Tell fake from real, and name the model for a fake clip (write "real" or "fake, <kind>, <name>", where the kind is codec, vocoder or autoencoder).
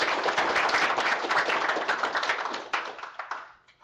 real